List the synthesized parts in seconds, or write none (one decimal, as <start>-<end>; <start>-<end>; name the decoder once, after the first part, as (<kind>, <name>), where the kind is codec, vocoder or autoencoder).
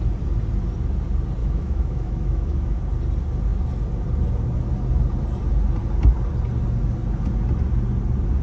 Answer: 1.4-2.8 (autoencoder, DAC-VAE)